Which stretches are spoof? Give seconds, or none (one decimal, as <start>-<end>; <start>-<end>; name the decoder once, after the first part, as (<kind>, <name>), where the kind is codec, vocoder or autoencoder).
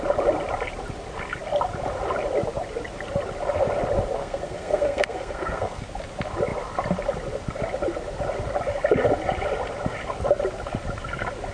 4.2-5.8 (codec, SNAC)